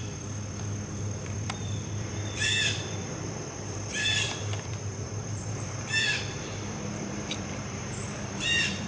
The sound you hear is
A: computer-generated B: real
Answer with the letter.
A